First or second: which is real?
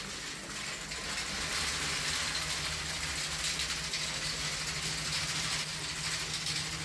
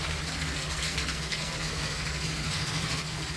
first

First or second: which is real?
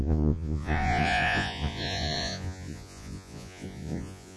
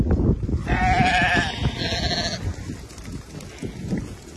second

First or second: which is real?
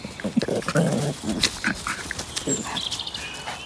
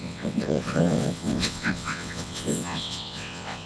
first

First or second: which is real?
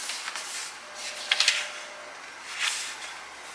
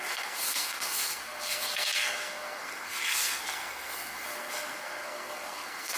first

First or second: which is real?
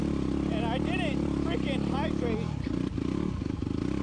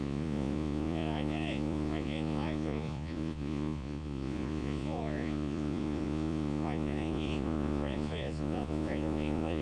first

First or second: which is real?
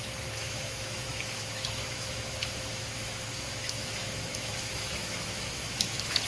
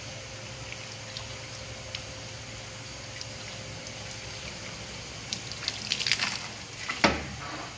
second